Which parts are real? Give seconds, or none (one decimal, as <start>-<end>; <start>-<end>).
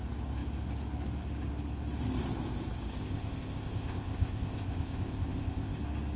0.0-3.0; 5.8-6.2